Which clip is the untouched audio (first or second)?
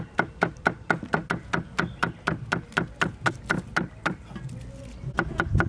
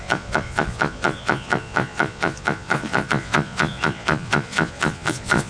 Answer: first